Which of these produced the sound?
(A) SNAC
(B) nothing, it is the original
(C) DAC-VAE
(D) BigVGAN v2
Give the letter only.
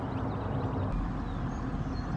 B